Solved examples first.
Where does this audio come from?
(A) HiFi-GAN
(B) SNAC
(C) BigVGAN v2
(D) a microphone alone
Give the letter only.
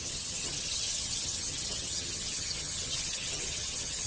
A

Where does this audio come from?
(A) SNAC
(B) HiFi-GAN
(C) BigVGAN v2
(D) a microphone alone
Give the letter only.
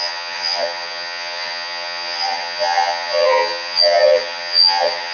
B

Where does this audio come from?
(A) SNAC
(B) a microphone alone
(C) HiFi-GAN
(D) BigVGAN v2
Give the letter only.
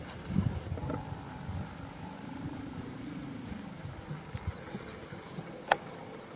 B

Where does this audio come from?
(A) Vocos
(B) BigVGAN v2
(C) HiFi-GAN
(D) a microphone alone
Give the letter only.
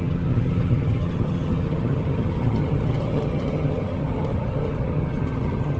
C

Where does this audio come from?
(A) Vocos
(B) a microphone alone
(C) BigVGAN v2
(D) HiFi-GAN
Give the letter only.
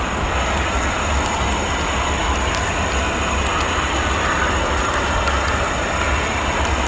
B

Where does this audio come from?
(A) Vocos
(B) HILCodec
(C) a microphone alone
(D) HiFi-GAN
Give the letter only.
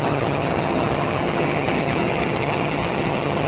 D